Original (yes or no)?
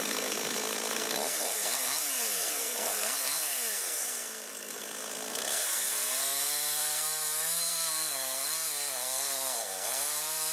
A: no